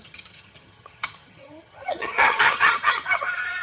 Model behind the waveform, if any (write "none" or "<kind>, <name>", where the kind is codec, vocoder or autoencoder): vocoder, HiFi-GAN